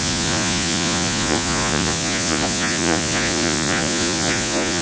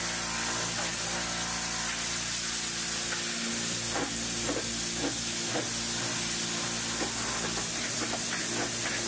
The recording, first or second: second